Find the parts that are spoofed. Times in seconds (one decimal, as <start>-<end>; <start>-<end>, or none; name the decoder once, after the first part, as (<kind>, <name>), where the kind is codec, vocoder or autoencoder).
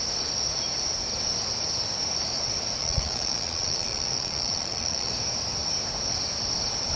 2.8-5.1 (vocoder, Vocos)